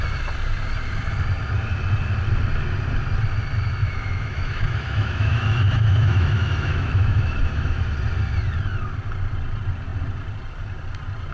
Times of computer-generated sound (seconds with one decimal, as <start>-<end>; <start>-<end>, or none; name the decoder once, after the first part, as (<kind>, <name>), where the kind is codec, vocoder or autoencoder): 3.8-7.8 (autoencoder, DAC-VAE)